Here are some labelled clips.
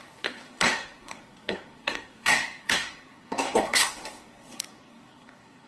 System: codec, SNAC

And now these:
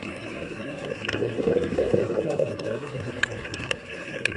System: codec, SNAC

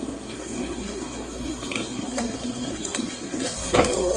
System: codec, SNAC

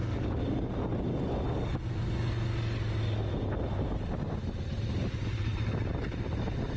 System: none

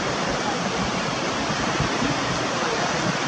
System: none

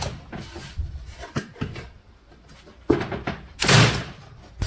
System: none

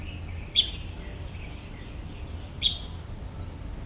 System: none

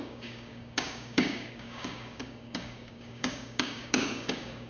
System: codec, DAC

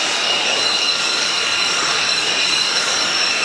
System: codec, DAC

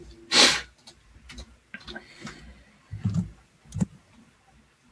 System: none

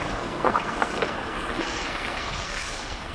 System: codec, SNAC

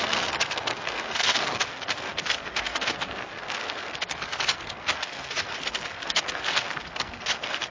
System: codec, SNAC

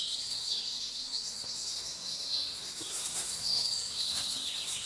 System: codec, SNAC